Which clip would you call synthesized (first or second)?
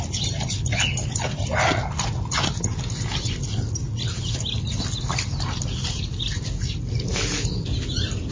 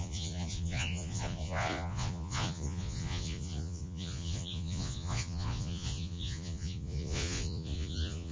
second